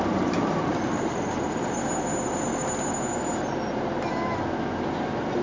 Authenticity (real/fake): real